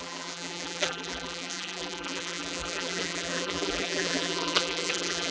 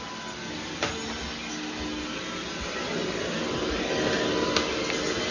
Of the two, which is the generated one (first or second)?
first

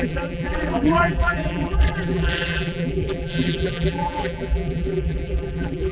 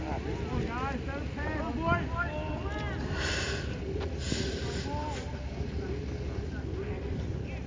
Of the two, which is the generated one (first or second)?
first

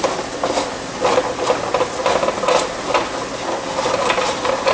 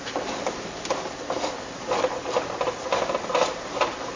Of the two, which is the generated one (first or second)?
second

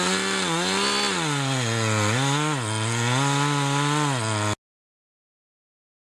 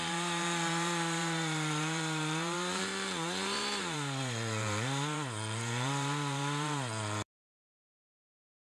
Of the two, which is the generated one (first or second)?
second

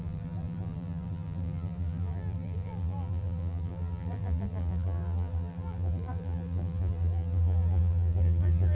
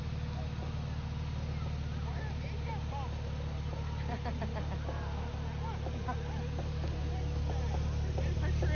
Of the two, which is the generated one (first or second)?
first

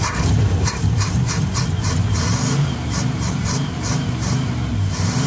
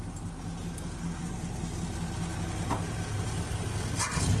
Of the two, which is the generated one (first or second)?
first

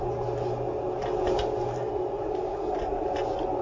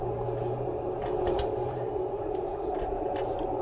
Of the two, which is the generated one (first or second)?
second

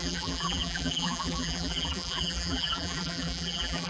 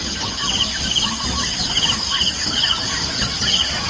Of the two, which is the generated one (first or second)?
first